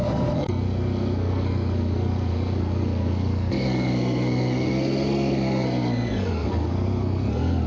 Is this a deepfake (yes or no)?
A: yes